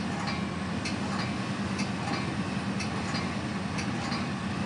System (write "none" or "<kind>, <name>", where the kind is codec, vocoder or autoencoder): none